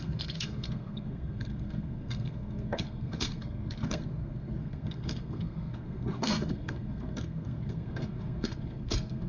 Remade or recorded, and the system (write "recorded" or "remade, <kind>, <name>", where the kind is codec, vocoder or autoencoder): remade, codec, SNAC